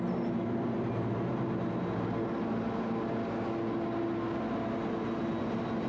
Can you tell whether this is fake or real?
real